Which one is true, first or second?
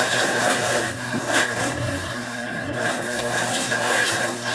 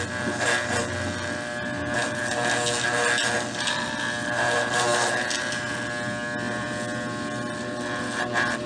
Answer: second